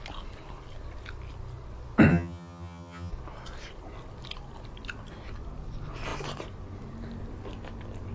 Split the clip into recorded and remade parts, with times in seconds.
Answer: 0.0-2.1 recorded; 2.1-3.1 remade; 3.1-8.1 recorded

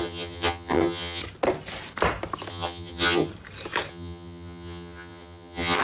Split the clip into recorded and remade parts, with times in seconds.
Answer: 0.0-1.2 remade; 1.2-2.5 recorded; 2.5-3.3 remade; 3.3-3.9 recorded; 3.9-5.8 remade

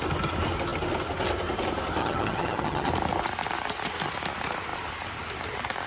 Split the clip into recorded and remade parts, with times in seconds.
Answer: 0.0-2.0 recorded; 2.0-2.9 remade; 2.9-5.9 recorded

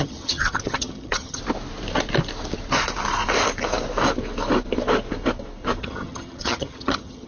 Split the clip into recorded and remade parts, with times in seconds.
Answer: 0.0-1.4 remade; 1.4-5.8 recorded; 5.8-7.3 remade

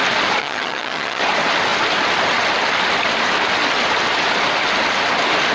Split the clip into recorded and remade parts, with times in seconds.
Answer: 0.0-0.4 recorded; 0.4-1.2 remade; 1.2-5.5 recorded